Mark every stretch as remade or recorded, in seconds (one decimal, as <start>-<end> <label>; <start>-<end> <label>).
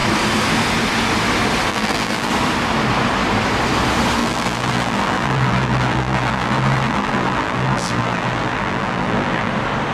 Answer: 0.0-1.7 recorded; 1.7-2.3 remade; 2.3-4.2 recorded; 4.2-9.5 remade; 9.5-9.9 recorded